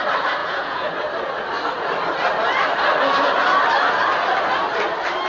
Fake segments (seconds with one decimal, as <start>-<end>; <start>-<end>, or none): 0.4-0.9